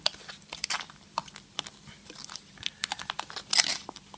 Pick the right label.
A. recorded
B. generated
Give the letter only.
B